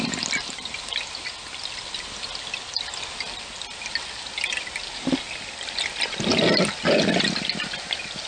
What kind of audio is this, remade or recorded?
recorded